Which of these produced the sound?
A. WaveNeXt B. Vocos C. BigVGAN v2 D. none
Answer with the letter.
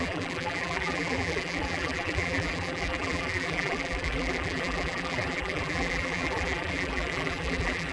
C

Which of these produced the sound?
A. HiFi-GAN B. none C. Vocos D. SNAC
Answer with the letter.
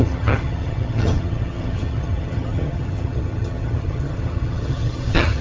A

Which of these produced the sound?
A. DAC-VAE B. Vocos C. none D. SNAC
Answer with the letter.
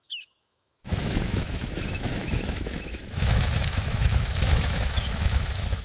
A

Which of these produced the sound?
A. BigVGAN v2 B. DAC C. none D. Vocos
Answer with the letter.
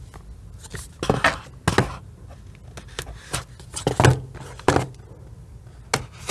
C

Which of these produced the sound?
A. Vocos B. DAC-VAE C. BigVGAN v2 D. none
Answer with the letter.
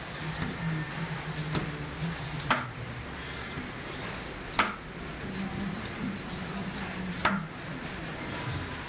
D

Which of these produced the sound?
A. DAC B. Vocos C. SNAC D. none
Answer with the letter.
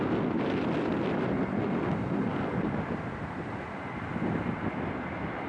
D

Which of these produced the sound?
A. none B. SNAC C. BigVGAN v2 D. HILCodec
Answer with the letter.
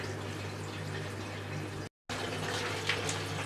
A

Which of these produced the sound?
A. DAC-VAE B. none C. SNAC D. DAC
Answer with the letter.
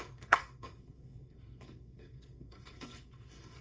C